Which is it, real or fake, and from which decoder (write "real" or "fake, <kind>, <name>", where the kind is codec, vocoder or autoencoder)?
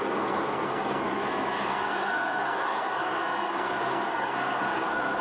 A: fake, codec, SNAC